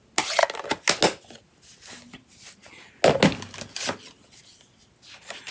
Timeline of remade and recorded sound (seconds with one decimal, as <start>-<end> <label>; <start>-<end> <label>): 0.0-5.5 recorded